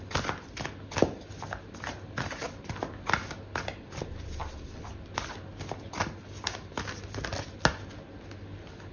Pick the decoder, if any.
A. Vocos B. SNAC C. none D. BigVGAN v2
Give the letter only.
C